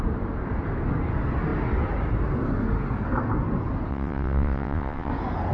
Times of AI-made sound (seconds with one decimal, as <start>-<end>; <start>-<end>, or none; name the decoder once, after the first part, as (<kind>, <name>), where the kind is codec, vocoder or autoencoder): 3.9-5.1 (vocoder, WaveNeXt)